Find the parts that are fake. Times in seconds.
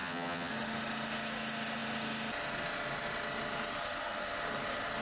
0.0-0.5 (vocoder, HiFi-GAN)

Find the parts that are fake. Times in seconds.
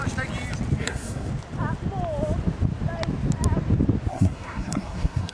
0.8-1.3 (codec, SNAC); 4.1-5.3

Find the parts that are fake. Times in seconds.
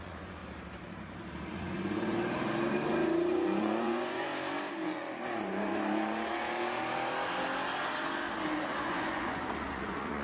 0.0-0.4 (vocoder, Vocos); 3.6-4.3; 8.8-10.2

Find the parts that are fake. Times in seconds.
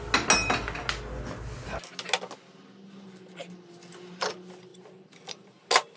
none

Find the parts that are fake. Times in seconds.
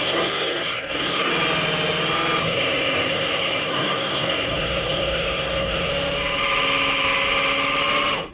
0.0-1.3 (codec, SNAC); 2.4-5.9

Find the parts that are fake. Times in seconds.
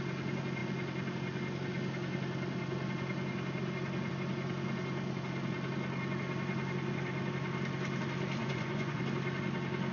8.4-9.0 (vocoder, Vocos)